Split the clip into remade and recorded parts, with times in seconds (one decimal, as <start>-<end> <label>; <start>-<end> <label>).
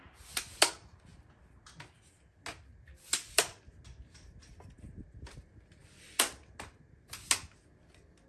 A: 0.0-8.3 recorded